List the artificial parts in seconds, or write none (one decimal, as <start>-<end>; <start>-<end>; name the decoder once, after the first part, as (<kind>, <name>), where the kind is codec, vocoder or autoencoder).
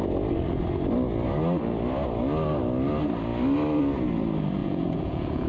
4.6-5.5 (vocoder, Vocos)